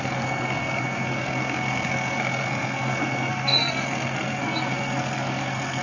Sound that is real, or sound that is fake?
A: fake